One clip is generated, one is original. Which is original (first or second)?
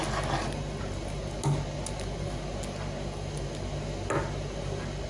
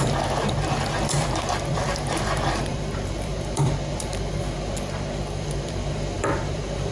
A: first